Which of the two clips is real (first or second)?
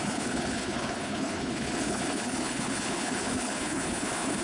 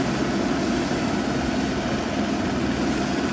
second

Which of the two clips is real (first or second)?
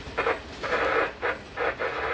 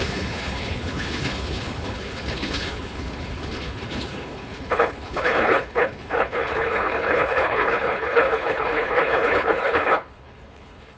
first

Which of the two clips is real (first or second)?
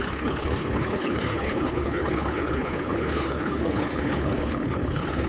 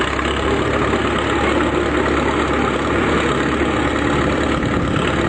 second